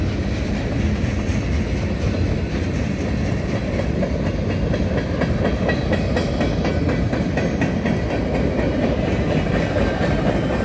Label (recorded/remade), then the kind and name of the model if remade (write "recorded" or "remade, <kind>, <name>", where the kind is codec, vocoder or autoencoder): recorded